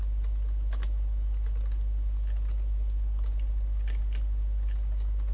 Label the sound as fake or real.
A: real